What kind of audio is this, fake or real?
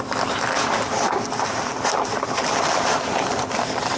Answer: fake